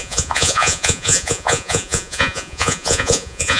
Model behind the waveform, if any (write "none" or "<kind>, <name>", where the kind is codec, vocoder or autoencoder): vocoder, Vocos